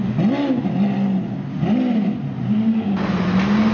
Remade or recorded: recorded